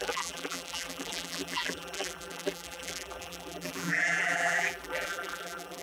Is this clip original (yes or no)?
no